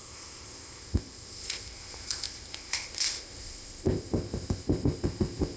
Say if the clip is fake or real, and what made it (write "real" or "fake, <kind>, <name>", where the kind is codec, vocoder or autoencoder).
fake, codec, ZipCodec